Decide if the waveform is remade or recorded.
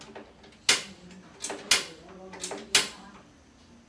recorded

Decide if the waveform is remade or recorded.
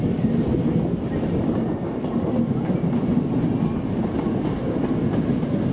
recorded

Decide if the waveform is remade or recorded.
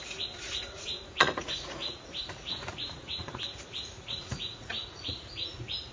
remade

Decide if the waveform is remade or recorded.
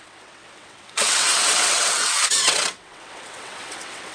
remade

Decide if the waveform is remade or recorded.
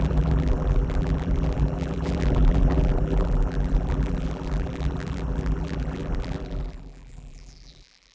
remade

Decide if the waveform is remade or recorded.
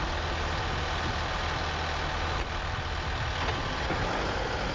recorded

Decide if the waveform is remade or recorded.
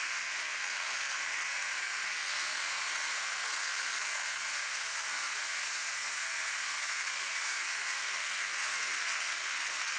remade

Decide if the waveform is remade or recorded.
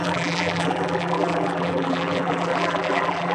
remade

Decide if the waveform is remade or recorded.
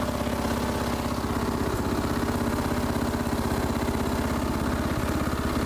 recorded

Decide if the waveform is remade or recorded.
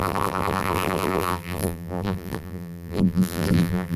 remade